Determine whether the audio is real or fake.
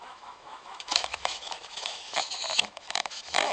fake